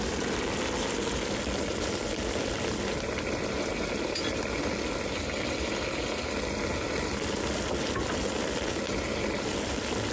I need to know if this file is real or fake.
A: real